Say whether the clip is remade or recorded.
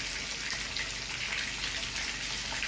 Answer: recorded